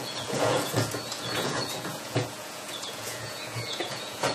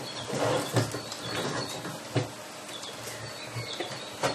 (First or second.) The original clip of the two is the second